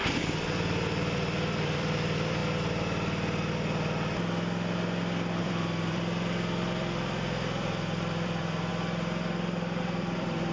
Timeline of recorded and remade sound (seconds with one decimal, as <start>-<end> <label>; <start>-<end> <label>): 0.0-2.4 remade; 2.4-5.4 recorded; 5.4-8.7 remade; 8.7-9.8 recorded; 9.8-10.5 remade